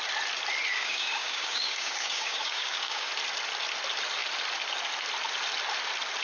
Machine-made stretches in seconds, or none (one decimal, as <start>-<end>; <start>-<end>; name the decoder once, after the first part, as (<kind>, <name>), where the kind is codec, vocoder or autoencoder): 0.7-3.1 (codec, DAC)